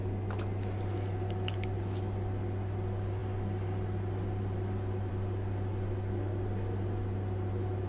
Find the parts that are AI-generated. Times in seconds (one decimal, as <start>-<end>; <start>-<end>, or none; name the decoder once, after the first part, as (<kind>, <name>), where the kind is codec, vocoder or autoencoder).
none